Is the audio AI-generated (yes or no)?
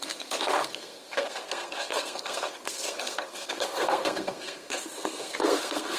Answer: yes